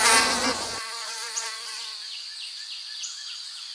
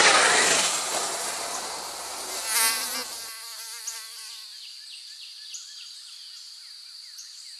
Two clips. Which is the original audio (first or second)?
second